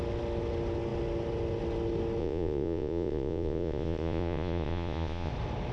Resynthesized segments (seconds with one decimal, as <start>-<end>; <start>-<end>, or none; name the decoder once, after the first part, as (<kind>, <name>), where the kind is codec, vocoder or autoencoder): 2.2-5.3 (vocoder, Vocos)